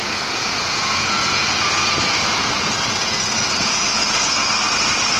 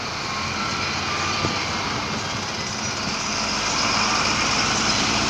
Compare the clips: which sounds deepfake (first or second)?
first